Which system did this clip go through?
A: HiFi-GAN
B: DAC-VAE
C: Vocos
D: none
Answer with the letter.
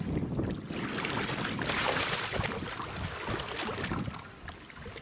D